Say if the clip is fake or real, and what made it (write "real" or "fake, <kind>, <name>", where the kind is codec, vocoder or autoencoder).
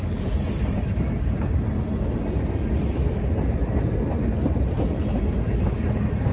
fake, vocoder, BigVGAN v2